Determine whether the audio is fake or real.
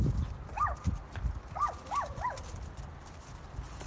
real